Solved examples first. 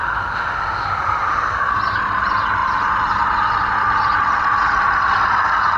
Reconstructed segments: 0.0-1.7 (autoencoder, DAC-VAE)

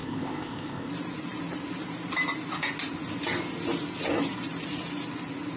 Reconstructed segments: 0.0-0.9 (codec, ZipCodec)